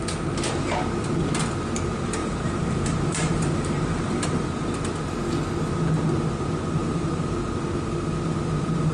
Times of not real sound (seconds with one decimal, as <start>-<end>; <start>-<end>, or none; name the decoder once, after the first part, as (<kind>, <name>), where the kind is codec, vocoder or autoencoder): 2.2-4.3 (vocoder, BigVGAN v2); 6.8-7.4